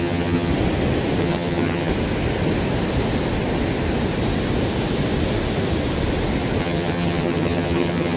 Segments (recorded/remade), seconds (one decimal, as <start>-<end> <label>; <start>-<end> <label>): 0.0-0.5 remade; 0.5-1.2 recorded; 1.2-1.9 remade; 1.9-6.6 recorded; 6.6-8.2 remade